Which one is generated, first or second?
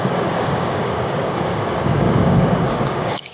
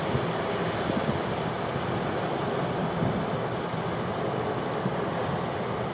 first